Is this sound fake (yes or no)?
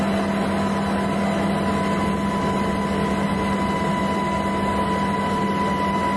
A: no